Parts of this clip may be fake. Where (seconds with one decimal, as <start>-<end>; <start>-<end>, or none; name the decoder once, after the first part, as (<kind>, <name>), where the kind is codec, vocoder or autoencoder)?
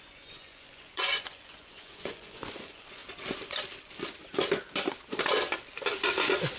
0.0-3.0 (vocoder, Vocos)